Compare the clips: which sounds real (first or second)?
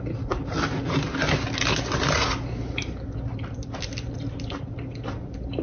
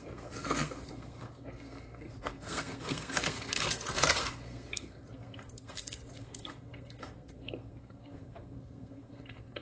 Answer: first